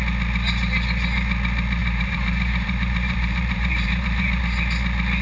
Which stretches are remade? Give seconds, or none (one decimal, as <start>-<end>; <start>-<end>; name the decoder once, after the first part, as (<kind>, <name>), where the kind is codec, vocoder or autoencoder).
1.8-4.4 (vocoder, BigVGAN v2)